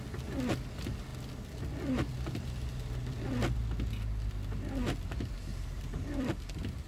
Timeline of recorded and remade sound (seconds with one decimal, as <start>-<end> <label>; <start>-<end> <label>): 0.0-5.5 recorded; 5.5-6.3 remade; 6.3-6.9 recorded